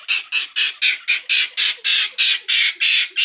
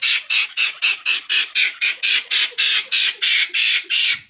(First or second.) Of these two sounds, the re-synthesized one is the second